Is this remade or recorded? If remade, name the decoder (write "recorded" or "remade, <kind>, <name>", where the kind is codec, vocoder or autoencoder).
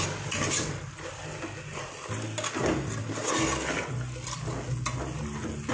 recorded